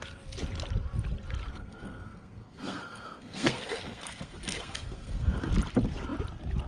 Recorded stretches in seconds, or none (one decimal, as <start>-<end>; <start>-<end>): 0.0-1.5; 5.5-6.7